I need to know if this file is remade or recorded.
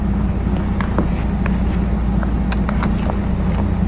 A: recorded